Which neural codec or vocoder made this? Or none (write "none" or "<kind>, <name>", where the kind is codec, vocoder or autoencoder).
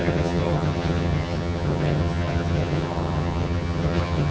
vocoder, HiFi-GAN